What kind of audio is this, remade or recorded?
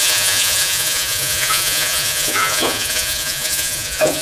remade